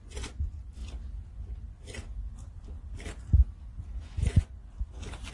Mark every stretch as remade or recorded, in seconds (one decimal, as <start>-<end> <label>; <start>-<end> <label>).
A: 0.0-0.8 remade; 0.8-4.0 recorded; 4.0-4.6 remade; 4.6-5.3 recorded